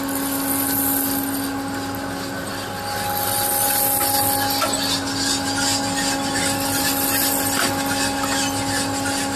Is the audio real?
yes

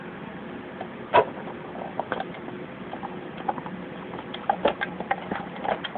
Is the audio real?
yes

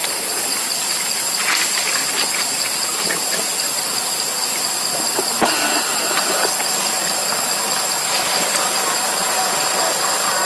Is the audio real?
yes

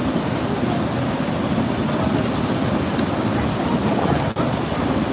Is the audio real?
yes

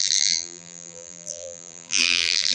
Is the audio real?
no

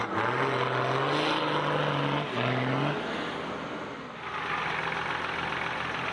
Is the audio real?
yes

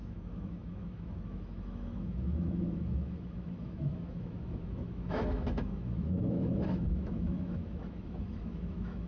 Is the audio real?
no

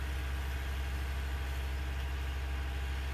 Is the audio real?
yes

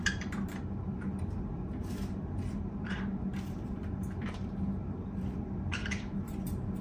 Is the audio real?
no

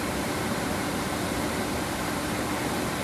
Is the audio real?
no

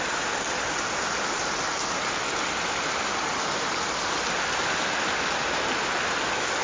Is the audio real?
yes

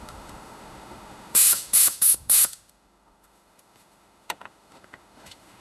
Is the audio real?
no